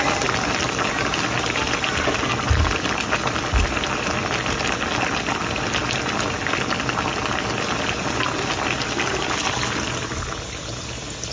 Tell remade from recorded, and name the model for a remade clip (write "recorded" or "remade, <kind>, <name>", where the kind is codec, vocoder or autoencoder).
recorded